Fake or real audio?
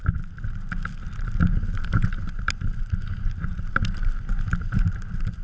real